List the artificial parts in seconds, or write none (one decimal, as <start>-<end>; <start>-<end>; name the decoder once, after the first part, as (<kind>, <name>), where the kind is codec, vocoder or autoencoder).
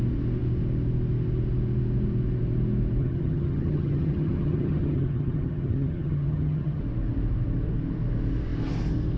3.0-6.8 (vocoder, HiFi-GAN)